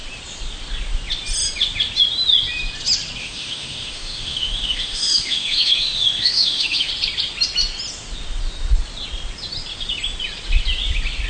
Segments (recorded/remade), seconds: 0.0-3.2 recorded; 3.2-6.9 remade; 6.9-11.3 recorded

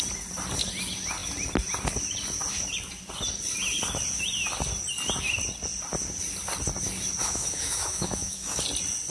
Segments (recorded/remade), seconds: 0.0-7.2 recorded; 7.2-8.6 remade; 8.6-9.1 recorded

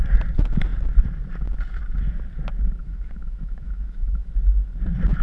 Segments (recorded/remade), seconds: 0.0-2.8 recorded; 2.8-4.3 remade; 4.3-5.2 recorded